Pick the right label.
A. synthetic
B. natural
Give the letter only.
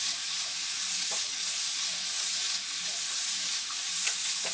A